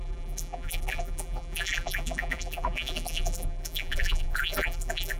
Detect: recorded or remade remade